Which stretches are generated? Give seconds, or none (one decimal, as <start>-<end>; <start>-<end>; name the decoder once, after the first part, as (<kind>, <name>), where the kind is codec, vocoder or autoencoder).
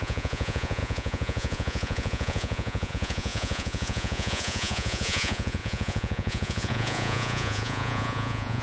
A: 0.0-8.6 (vocoder, Vocos)